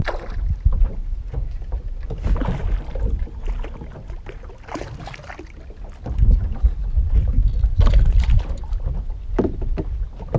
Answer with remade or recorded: recorded